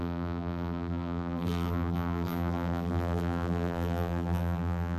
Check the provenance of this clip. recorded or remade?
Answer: remade